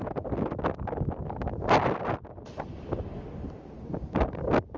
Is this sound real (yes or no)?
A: yes